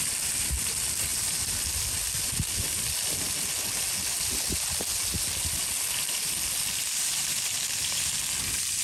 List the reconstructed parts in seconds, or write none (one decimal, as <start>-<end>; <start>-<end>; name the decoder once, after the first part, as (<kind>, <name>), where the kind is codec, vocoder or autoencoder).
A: none